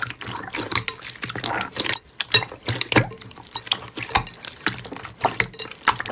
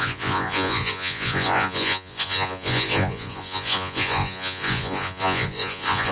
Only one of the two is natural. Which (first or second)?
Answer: first